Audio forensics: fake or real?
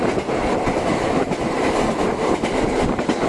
real